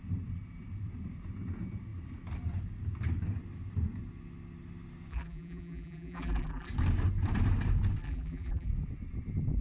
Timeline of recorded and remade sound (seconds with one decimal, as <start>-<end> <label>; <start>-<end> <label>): 0.0-5.1 recorded; 5.1-6.7 remade; 6.7-8.0 recorded; 8.0-8.7 remade; 8.7-9.6 recorded